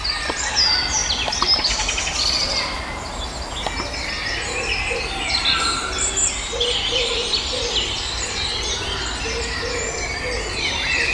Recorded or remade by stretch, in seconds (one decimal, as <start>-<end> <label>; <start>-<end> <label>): 0.0-11.1 recorded